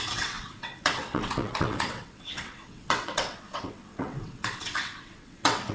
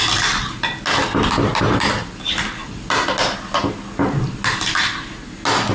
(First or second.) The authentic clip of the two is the second